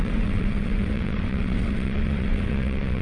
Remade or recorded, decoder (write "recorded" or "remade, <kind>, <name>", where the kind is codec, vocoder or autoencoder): remade, vocoder, WaveNeXt